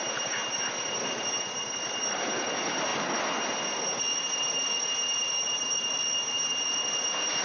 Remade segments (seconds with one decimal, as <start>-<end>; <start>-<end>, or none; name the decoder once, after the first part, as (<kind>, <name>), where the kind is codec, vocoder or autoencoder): none